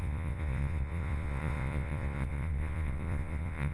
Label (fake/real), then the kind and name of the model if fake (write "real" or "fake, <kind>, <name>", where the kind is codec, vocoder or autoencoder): fake, vocoder, Vocos